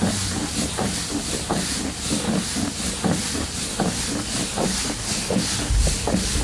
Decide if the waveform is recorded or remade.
recorded